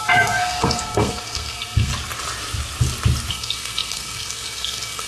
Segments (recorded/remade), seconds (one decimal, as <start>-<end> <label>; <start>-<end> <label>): 0.0-1.9 remade; 1.9-3.3 recorded; 3.3-5.1 remade